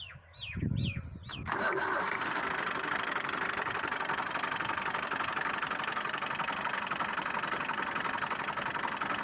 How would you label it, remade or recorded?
recorded